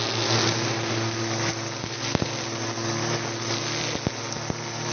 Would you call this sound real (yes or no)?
yes